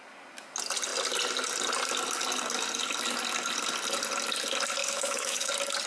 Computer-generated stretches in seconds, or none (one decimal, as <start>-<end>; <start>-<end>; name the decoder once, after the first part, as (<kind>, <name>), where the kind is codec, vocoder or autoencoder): 4.8-5.5 (autoencoder, DAC-VAE)